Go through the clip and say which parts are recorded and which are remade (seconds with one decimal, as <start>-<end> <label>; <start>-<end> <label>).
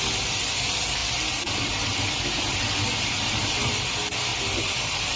0.0-5.2 recorded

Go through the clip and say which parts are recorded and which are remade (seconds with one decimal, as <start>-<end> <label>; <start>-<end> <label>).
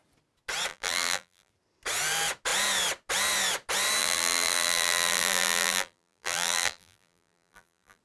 0.0-0.7 recorded; 0.7-1.5 remade; 1.5-4.0 recorded; 4.0-8.0 remade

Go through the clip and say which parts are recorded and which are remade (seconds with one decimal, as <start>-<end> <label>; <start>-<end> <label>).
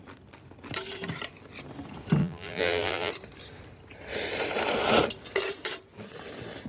0.0-2.2 recorded; 2.2-3.1 remade; 3.1-6.7 recorded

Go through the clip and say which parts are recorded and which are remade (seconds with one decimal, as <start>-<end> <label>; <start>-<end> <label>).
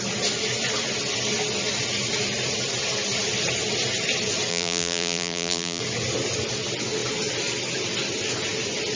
0.0-4.5 recorded; 4.5-5.8 remade; 5.8-9.0 recorded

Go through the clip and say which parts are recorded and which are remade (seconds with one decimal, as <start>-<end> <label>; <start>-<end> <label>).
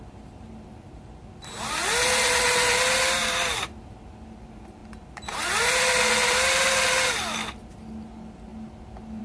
0.0-9.2 remade